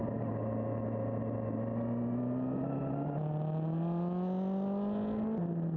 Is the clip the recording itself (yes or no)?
yes